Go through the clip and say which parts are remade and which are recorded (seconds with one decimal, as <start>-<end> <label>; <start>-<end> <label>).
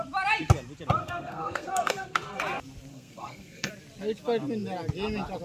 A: 0.0-1.0 recorded; 1.0-2.4 remade; 2.4-2.9 recorded; 2.9-3.7 remade; 3.7-5.4 recorded